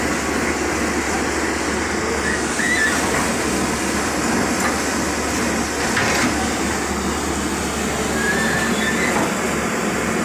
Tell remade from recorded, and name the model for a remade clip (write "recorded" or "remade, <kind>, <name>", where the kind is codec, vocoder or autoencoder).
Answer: recorded